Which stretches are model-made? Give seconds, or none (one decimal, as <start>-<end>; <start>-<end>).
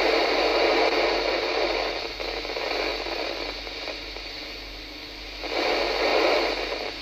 0.5-2.0; 2.9-4.3; 6.1-7.0